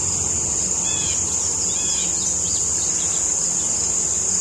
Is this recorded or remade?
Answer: recorded